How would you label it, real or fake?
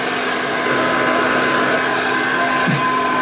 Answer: real